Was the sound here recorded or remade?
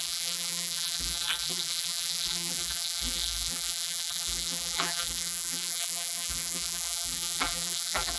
remade